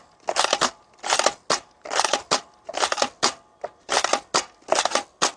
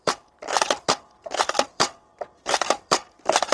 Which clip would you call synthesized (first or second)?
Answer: second